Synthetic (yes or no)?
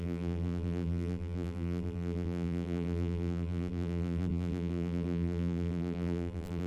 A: yes